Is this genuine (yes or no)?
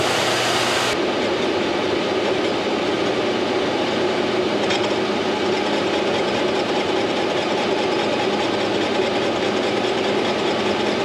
yes